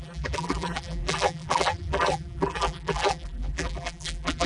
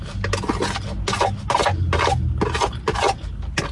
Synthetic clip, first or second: first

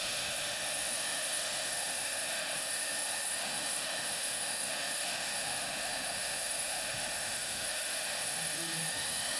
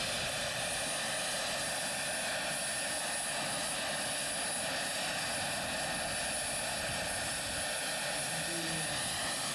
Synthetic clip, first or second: first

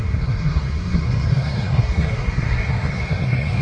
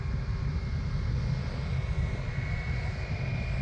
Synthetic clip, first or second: first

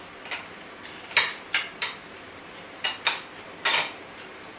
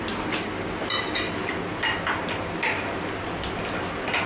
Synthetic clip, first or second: first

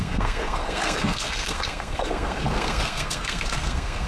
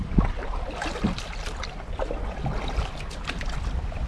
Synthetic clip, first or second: first